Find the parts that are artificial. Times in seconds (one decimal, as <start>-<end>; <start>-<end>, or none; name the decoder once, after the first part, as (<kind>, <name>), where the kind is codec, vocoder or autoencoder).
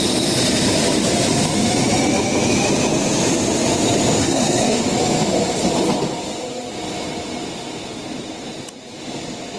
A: 4.2-4.8 (codec, SNAC)